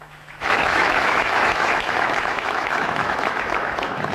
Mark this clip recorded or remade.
remade